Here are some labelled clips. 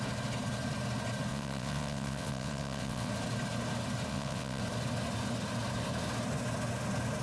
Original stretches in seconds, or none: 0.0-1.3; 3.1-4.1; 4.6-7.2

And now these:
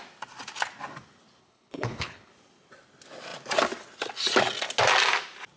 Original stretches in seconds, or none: 0.0-1.4; 2.3-5.6

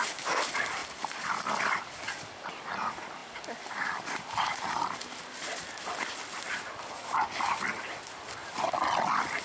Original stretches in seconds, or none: 0.0-9.4

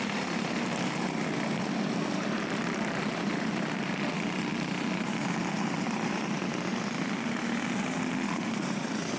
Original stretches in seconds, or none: 0.0-9.2

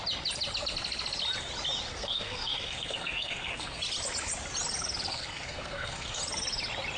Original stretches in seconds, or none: 0.0-1.9; 3.8-5.1; 6.2-7.0

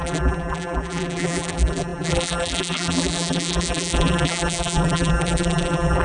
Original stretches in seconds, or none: none

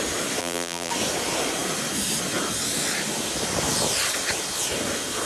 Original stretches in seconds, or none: 0.0-0.4; 0.9-5.3

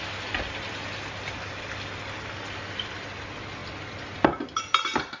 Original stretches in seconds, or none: 0.0-5.2